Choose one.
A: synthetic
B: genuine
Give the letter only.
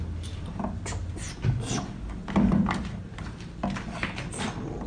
B